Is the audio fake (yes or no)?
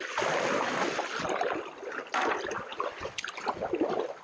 no